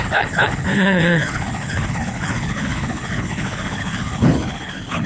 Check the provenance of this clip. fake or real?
fake